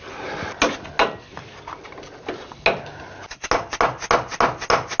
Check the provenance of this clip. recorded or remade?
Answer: recorded